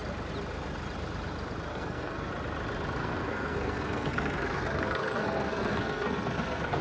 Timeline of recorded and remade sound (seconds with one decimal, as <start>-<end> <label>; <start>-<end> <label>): 0.0-1.7 recorded; 1.7-2.3 remade; 2.3-3.0 recorded; 3.0-6.8 remade